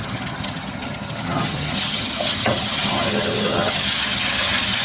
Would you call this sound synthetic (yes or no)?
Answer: yes